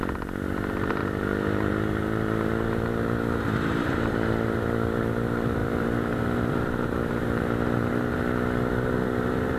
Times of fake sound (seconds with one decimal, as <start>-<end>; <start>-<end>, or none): 0.0-9.6